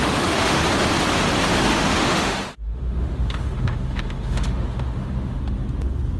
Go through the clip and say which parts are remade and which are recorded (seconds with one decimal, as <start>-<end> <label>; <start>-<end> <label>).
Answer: 0.0-0.6 remade; 0.6-1.7 recorded; 1.7-5.4 remade; 5.4-6.2 recorded